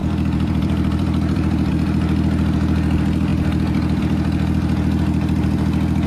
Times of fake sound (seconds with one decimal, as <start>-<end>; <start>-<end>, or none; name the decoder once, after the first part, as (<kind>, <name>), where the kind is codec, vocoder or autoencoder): 0.0-1.7 (vocoder, BigVGAN v2)